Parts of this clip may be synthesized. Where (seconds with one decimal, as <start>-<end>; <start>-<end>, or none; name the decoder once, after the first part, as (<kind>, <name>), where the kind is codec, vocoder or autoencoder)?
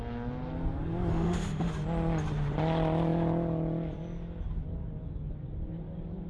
1.1-1.7 (autoencoder, DAC-VAE)